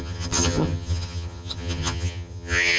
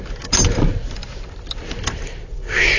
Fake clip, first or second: first